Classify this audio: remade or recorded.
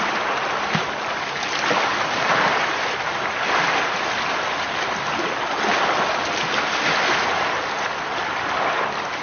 recorded